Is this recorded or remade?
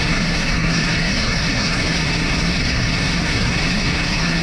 remade